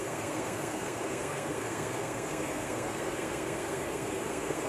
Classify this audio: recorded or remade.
remade